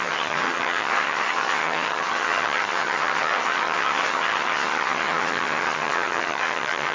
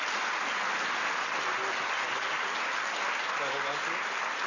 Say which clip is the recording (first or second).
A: second